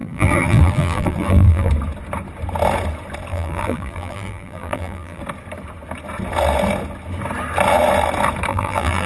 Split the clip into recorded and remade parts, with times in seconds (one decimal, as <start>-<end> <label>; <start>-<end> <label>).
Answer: 0.0-1.7 remade; 1.7-3.3 recorded; 3.3-5.2 remade; 5.2-8.5 recorded; 8.5-9.1 remade